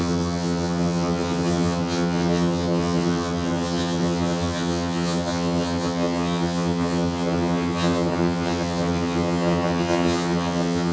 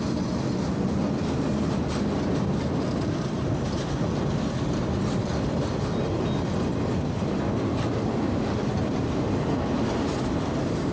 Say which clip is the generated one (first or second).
first